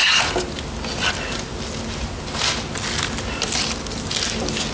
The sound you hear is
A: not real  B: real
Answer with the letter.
B